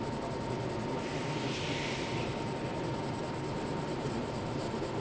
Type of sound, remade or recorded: recorded